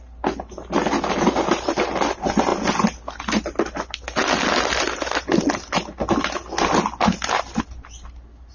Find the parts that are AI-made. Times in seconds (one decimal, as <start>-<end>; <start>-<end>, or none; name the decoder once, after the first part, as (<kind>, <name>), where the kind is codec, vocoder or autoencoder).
none